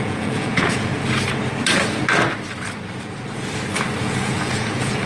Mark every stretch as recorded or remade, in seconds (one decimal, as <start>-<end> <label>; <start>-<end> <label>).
0.0-0.9 remade; 0.9-4.0 recorded; 4.0-5.1 remade